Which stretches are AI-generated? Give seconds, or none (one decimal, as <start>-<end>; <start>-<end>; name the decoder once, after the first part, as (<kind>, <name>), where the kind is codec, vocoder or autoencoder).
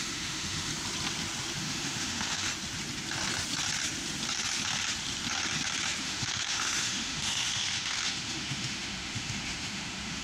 0.0-0.7 (autoencoder, DAC-VAE); 1.6-2.5; 6.0-10.2